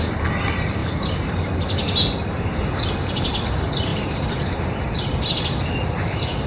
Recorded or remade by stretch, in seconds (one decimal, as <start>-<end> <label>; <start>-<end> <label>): 0.0-0.8 recorded; 0.8-1.3 remade; 1.3-3.9 recorded; 3.9-4.8 remade; 4.8-6.5 recorded